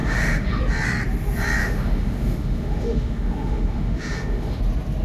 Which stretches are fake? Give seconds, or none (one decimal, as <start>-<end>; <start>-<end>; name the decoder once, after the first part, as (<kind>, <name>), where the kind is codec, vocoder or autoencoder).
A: 0.0-0.6 (autoencoder, DAC-VAE); 1.6-4.6